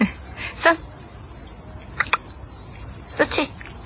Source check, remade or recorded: recorded